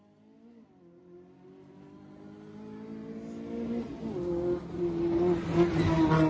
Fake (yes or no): no